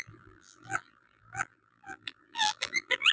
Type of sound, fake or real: fake